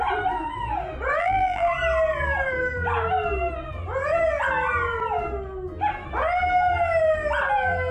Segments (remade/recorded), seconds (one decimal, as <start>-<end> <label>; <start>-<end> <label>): 0.0-1.2 recorded; 1.2-1.7 remade; 1.7-7.9 recorded